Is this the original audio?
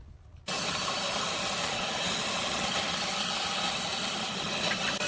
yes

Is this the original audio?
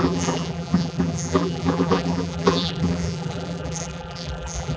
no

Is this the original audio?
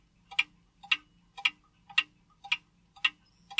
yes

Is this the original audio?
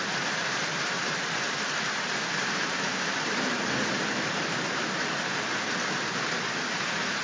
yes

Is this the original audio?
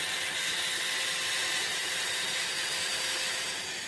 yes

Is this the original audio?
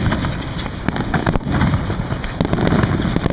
yes